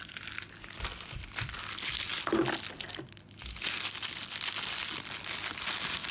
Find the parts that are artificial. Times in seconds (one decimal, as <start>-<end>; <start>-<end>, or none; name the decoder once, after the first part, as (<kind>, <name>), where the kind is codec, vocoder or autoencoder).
none